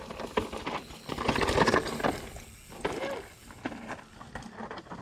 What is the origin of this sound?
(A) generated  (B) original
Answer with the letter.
B